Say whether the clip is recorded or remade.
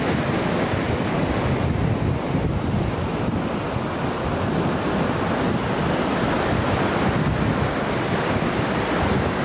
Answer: recorded